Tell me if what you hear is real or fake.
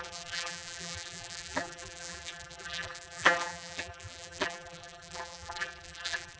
fake